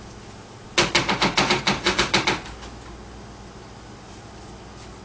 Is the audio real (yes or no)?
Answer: yes